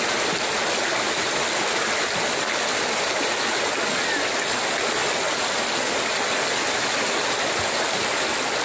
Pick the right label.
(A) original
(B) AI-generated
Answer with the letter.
A